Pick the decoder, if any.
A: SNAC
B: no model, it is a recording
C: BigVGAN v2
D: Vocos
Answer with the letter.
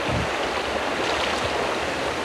B